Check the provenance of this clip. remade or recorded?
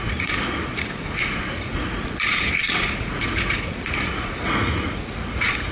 remade